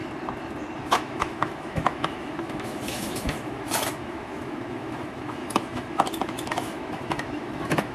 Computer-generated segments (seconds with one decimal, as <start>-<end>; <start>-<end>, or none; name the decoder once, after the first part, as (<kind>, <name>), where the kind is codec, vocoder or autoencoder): 0.8-7.9 (autoencoder, DAC-VAE)